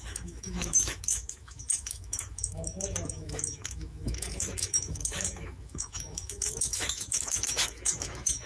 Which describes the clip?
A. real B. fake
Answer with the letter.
B